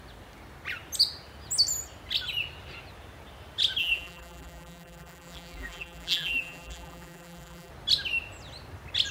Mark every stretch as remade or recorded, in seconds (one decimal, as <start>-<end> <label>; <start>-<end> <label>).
0.0-3.8 recorded; 3.8-7.7 remade; 7.7-9.1 recorded